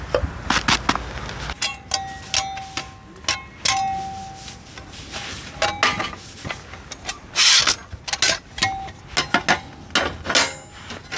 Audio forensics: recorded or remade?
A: recorded